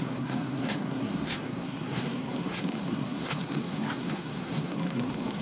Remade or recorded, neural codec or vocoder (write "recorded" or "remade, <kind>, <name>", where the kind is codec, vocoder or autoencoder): remade, codec, SNAC